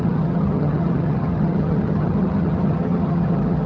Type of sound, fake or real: fake